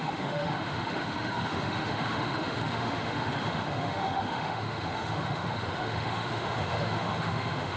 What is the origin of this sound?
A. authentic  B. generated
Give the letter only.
B